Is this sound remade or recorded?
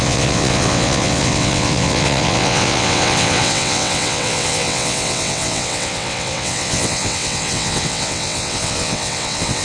remade